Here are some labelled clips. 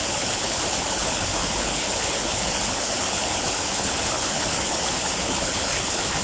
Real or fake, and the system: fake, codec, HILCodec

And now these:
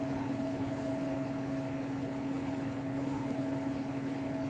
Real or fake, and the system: fake, codec, HILCodec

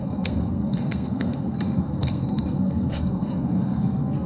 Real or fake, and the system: fake, codec, SNAC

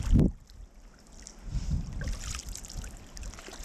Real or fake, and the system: real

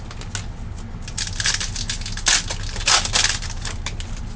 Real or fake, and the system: real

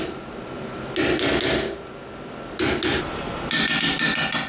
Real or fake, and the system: real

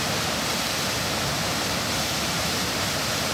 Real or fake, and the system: fake, vocoder, BigVGAN v2